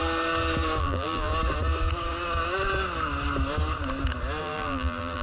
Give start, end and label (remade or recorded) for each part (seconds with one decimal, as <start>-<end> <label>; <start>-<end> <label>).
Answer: 0.0-0.8 recorded; 0.8-1.3 remade; 1.3-4.4 recorded; 4.4-5.2 remade